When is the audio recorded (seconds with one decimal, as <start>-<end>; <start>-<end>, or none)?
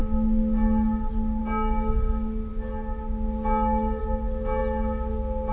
0.0-5.5